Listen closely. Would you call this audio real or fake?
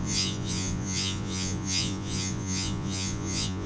fake